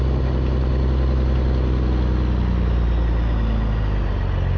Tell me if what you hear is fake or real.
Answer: real